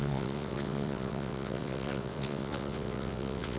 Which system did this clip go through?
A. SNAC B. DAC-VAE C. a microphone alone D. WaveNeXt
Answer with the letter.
D